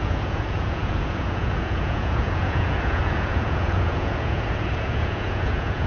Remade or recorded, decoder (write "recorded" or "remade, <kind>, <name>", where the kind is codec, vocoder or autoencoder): remade, vocoder, Vocos